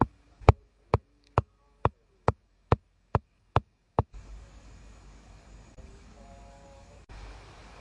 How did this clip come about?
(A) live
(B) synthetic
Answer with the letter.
B